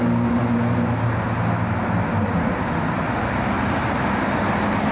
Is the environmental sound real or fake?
real